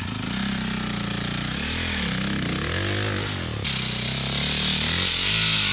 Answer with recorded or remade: recorded